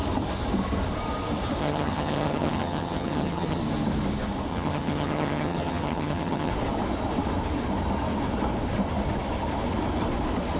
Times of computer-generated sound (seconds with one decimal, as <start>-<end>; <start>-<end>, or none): 1.6-3.6; 4.5-6.5